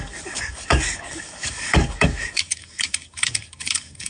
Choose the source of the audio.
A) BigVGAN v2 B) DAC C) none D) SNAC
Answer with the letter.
B